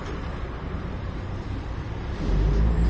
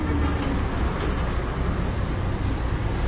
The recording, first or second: second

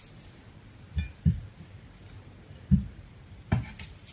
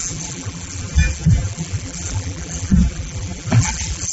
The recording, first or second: first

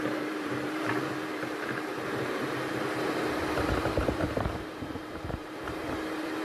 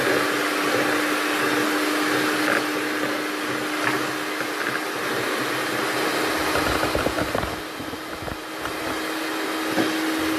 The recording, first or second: second